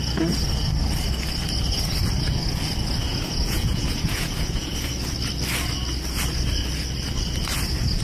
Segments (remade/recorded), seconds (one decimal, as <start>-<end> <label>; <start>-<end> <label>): 0.0-3.1 recorded; 3.1-4.9 remade; 4.9-8.0 recorded